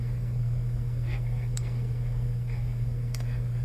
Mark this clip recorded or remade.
remade